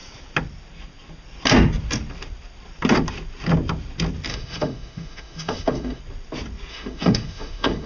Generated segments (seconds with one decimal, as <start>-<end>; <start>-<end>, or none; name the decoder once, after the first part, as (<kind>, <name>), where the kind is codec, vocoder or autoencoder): 4.3-6.0 (autoencoder, DAC-VAE); 6.7-7.9